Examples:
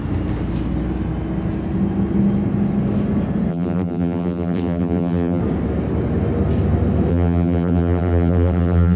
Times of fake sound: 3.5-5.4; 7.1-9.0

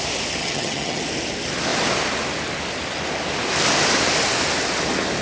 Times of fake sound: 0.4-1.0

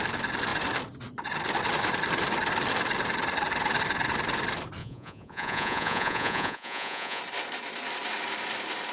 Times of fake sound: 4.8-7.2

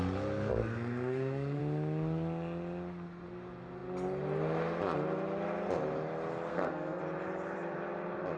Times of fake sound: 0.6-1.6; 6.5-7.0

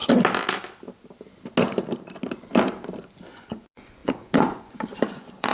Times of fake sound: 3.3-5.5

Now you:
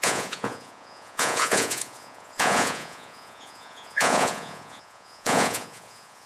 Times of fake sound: 0.0-6.3

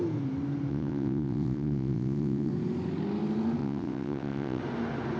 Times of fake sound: 0.7-2.5; 3.6-4.6